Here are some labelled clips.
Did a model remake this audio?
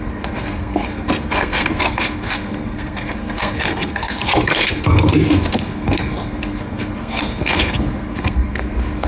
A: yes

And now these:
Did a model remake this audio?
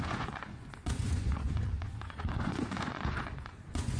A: yes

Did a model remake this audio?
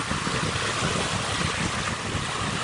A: no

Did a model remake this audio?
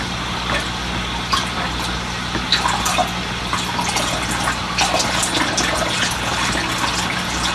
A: no